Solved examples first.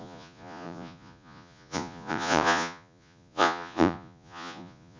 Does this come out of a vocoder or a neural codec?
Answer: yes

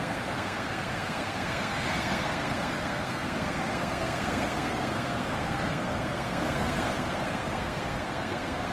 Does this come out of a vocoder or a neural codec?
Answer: yes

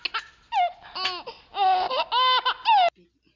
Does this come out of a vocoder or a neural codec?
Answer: no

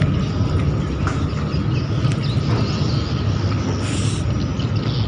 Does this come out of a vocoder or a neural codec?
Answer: no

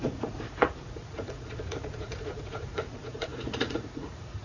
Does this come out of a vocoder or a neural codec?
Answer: yes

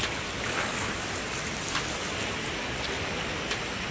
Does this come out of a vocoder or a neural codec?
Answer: no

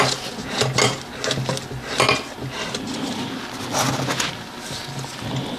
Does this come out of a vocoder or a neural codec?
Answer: no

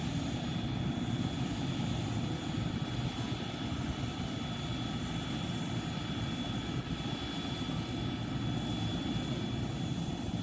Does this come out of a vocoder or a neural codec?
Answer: no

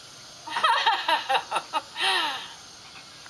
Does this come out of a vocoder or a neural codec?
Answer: no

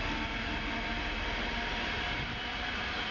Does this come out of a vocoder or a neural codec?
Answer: no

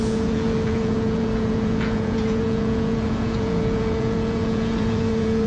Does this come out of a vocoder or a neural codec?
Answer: yes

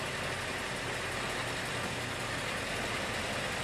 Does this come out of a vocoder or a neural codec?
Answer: no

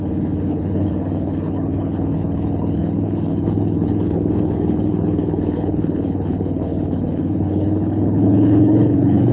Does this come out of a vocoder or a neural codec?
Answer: yes